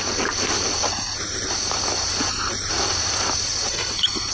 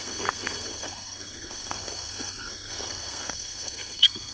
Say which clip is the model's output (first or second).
second